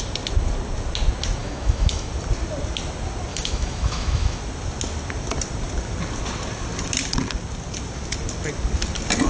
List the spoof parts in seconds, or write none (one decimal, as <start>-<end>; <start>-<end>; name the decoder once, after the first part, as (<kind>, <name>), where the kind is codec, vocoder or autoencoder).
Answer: 1.4-2.1 (autoencoder, DAC-VAE); 3.3-4.4